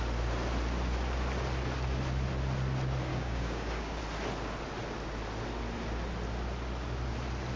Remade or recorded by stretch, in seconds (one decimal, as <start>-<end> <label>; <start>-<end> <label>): 0.0-3.1 recorded; 3.1-4.0 remade; 4.0-7.6 recorded